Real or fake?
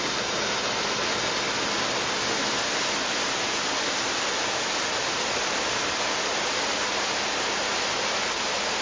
real